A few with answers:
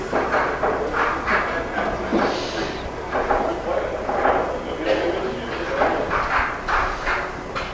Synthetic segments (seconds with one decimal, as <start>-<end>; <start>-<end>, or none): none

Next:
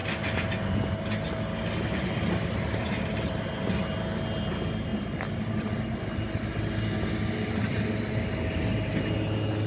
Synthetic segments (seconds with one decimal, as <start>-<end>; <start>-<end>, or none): none

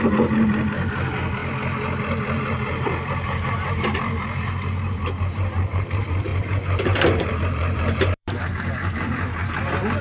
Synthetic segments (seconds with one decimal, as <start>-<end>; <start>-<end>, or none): 0.0-1.4; 2.4-10.0